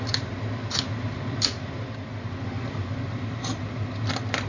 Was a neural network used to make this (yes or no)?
yes